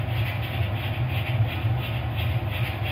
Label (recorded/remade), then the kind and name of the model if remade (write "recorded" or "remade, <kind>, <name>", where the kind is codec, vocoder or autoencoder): recorded